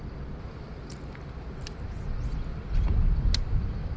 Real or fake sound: real